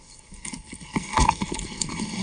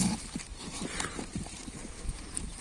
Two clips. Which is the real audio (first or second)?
second